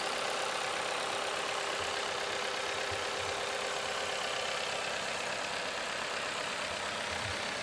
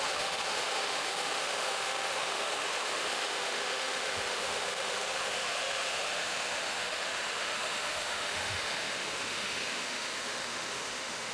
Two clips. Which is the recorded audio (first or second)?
first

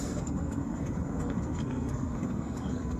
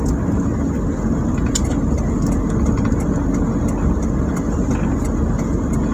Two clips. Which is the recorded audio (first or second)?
second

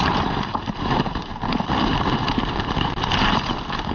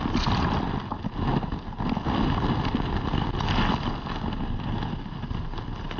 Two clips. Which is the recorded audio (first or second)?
second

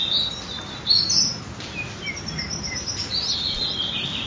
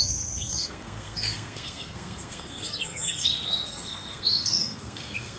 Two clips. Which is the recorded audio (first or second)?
first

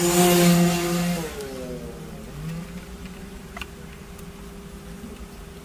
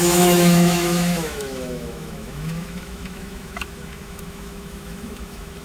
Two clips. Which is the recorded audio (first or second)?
first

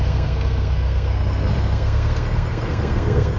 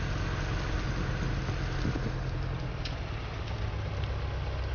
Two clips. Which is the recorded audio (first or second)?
second